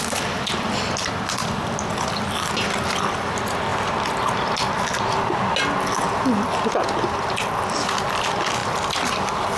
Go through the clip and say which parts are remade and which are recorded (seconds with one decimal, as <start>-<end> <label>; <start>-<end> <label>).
0.0-9.6 recorded